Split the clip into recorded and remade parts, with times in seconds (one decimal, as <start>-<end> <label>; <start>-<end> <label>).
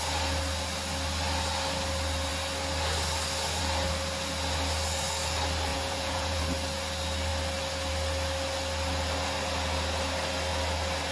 0.0-5.7 recorded; 5.7-6.4 remade; 6.4-11.1 recorded